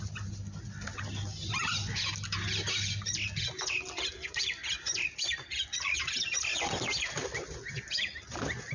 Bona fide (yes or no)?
yes